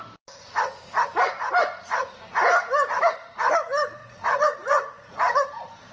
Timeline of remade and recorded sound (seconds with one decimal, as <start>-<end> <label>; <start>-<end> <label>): 0.0-4.0 recorded; 4.0-5.1 remade; 5.1-5.9 recorded